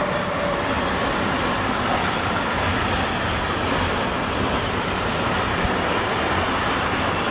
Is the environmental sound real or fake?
real